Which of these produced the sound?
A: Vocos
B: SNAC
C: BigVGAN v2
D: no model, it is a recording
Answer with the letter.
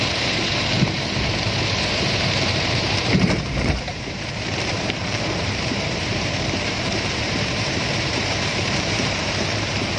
C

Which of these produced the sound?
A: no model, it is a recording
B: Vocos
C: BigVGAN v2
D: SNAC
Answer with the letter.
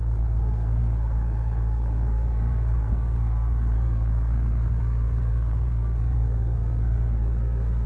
D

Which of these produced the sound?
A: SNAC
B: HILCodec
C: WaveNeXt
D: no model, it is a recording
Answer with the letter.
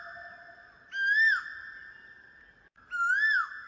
D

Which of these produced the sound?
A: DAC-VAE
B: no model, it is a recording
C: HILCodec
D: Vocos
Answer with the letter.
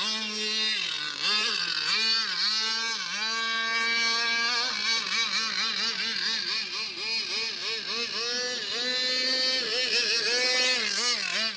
B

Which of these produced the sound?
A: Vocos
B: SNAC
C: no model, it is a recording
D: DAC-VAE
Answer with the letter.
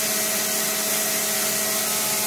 C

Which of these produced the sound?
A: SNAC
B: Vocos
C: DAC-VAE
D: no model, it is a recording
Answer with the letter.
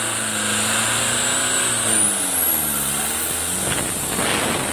D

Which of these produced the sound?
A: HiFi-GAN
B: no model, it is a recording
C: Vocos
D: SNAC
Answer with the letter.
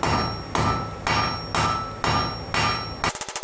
B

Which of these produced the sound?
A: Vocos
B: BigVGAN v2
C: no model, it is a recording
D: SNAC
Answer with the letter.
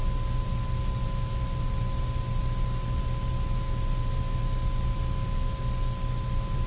C